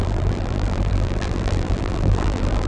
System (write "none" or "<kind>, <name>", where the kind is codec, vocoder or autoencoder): vocoder, BigVGAN v2